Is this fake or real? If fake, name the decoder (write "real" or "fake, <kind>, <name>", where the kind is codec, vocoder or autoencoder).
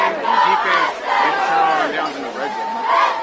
real